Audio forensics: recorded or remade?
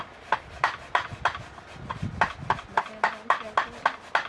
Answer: recorded